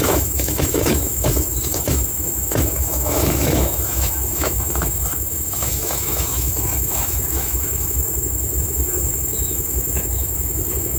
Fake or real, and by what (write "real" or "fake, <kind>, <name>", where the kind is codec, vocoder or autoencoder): fake, autoencoder, DAC-VAE